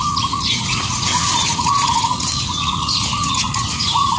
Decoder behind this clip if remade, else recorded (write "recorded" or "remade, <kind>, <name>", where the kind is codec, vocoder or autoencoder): remade, vocoder, Vocos